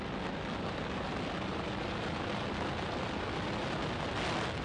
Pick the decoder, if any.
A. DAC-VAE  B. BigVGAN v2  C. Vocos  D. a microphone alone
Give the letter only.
D